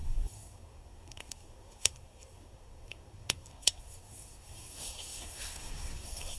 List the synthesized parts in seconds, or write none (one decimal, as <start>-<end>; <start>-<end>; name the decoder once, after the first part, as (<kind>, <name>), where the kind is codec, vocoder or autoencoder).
0.0-6.4 (codec, SNAC)